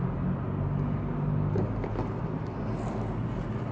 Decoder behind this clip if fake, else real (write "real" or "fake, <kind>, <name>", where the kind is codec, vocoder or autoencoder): real